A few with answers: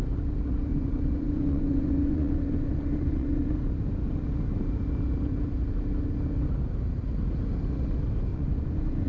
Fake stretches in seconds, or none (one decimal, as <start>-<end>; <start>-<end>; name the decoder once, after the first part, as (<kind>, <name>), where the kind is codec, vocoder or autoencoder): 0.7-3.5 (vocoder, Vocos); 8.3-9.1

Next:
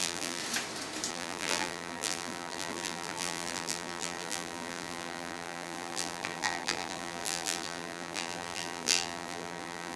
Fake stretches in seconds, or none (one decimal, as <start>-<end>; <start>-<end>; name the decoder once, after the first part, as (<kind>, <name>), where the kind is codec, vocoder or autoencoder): 0.0-0.4 (vocoder, BigVGAN v2); 1.1-10.0

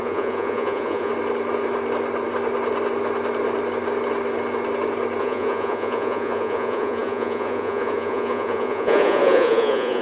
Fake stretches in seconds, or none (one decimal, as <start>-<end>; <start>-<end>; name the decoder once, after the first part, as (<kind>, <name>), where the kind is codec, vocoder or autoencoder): 0.0-1.1 (vocoder, Vocos); 5.2-10.0

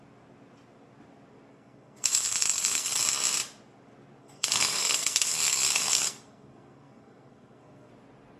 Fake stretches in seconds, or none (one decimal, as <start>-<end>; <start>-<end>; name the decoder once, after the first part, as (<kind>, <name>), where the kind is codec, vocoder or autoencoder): 1.5-3.0 (codec, SNAC); 4.2-7.9

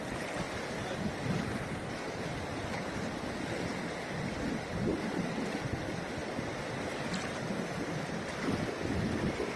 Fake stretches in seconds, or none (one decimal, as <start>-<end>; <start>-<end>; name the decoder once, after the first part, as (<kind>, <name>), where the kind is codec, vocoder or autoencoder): none

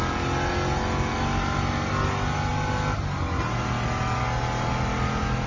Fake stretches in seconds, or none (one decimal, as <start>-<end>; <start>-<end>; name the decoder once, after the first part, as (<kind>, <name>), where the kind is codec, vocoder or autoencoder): none